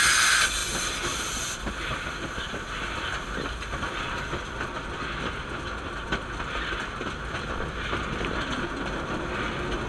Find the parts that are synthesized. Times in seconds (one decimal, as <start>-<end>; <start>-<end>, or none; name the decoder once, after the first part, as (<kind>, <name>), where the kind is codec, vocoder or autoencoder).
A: none